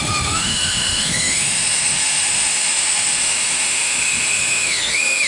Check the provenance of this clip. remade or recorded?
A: remade